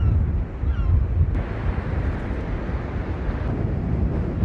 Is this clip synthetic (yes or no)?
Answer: no